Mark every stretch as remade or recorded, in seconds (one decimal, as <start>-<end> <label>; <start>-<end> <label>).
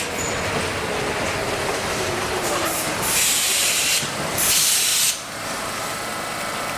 0.0-1.4 recorded; 1.4-4.4 remade; 4.4-4.9 recorded; 4.9-5.9 remade; 5.9-6.8 recorded